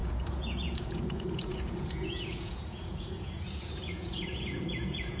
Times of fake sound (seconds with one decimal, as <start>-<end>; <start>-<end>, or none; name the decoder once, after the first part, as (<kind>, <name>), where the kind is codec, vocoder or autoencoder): 0.0-5.2 (vocoder, Vocos)

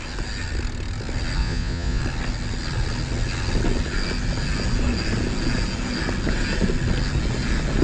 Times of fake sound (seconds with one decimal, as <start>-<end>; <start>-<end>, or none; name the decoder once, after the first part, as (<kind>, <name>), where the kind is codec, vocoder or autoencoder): 1.4-2.0 (vocoder, Vocos)

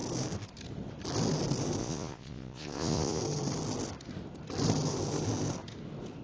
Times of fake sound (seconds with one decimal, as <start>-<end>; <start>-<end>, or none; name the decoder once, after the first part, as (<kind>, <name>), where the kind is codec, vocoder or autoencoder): 1.8-3.2 (vocoder, Vocos)

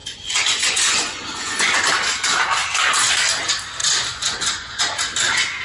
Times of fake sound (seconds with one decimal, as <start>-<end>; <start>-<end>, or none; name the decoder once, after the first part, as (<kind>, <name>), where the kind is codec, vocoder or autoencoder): 0.0-1.9 (vocoder, Vocos); 3.8-4.8

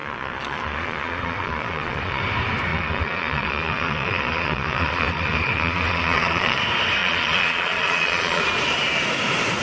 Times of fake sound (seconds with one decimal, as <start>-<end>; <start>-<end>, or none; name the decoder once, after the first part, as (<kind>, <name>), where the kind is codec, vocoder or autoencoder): 0.0-2.2 (vocoder, Vocos); 2.7-6.6; 7.0-8.4

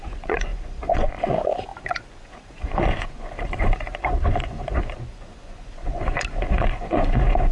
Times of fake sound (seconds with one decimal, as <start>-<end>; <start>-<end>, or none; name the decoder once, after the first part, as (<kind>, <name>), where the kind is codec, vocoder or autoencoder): 0.0-7.5 (vocoder, Vocos)

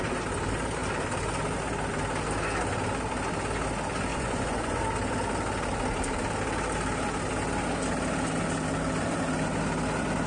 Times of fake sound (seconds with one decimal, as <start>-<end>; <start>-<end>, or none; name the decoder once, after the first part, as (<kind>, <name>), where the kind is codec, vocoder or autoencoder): 4.1-4.8 (vocoder, Vocos)

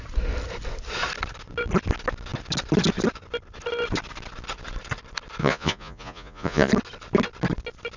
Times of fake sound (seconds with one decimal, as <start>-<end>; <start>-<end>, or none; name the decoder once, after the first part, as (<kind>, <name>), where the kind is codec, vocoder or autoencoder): 5.4-6.7 (vocoder, Vocos)